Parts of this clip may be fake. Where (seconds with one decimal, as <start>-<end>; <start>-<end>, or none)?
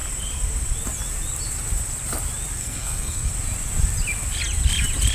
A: 2.6-3.3